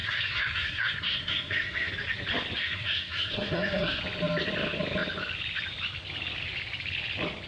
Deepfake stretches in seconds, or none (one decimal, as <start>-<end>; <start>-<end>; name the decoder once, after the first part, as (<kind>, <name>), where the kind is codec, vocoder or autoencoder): 0.0-1.9 (codec, SNAC); 2.6-4.0